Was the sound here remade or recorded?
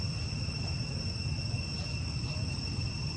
recorded